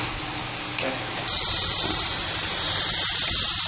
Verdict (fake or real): real